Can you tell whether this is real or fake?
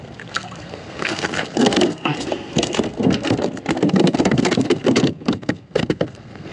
fake